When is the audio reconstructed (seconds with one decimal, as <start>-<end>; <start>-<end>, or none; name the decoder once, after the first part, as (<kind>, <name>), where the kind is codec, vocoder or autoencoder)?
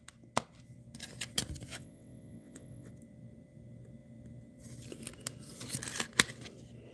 1.7-2.9 (vocoder, WaveNeXt)